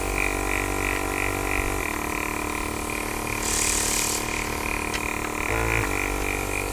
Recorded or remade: recorded